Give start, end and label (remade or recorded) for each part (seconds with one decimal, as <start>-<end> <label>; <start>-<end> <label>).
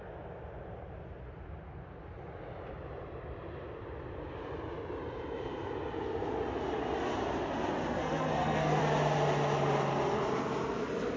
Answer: 0.0-8.0 recorded; 8.0-8.8 remade; 8.8-11.2 recorded